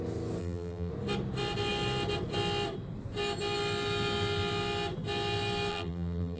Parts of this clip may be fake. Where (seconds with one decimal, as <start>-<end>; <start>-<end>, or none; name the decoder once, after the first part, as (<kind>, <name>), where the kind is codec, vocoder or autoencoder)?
0.4-0.9 (vocoder, BigVGAN v2); 5.7-6.4